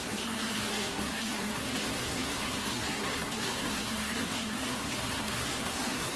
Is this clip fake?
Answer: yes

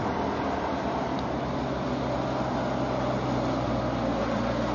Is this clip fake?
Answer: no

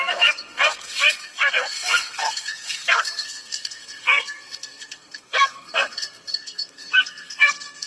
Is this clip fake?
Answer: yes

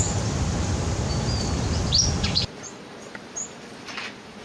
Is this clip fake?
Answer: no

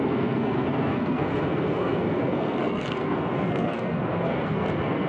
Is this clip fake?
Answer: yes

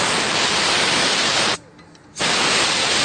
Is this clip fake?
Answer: no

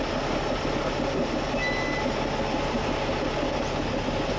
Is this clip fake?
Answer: no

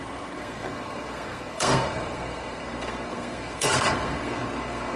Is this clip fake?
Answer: yes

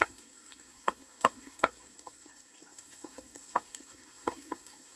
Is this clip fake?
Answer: yes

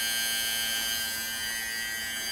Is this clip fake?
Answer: no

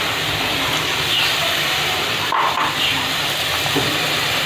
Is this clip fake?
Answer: no